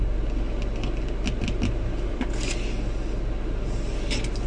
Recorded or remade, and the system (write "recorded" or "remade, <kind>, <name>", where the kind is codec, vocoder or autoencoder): recorded